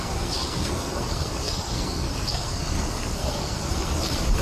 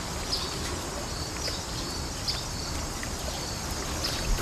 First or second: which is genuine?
second